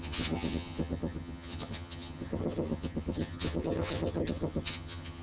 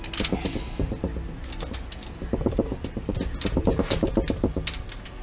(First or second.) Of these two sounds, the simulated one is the first